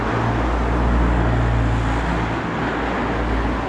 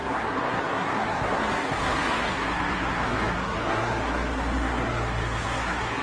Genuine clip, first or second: first